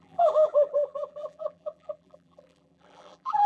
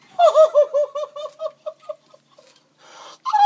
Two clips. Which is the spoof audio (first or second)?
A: first